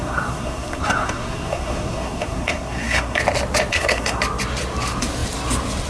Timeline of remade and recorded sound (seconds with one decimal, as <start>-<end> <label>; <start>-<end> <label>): 0.0-3.2 remade; 3.2-3.7 recorded; 3.7-4.2 remade; 4.2-5.9 recorded